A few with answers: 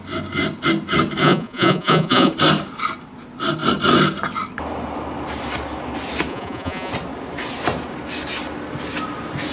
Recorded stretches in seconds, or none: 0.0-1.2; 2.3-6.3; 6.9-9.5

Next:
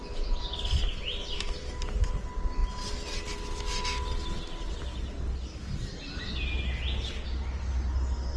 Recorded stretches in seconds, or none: 0.0-1.6; 2.2-8.4

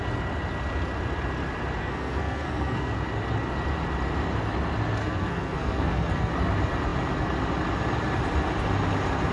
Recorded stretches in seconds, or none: 0.0-1.8; 2.9-5.0; 6.3-9.3

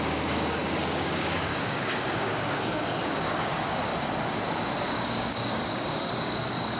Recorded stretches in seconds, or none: 3.9-4.9